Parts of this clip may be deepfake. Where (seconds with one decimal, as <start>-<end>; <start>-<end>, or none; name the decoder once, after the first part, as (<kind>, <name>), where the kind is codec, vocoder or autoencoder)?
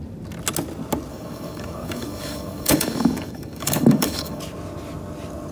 1.1-4.4 (codec, DAC)